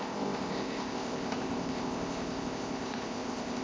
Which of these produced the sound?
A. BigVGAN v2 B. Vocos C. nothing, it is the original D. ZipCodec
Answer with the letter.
D